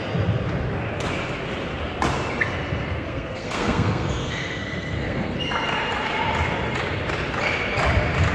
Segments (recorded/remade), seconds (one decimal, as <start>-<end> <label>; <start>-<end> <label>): 0.0-2.8 recorded; 2.8-5.4 remade; 5.4-8.3 recorded